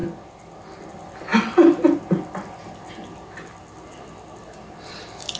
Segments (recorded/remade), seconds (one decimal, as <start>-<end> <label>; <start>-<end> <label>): 0.0-5.4 recorded